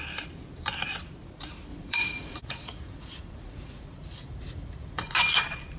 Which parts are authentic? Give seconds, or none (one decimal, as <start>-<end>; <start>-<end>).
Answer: 0.0-1.7; 5.1-5.8